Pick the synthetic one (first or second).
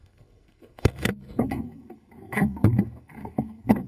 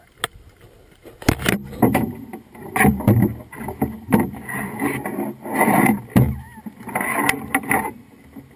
first